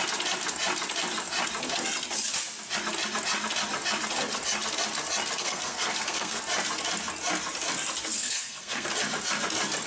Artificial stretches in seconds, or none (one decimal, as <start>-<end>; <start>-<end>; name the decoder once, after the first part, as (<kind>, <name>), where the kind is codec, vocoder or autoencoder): 5.4-6.4 (codec, SNAC); 8.1-8.9